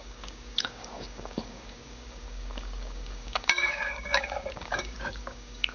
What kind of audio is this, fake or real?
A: fake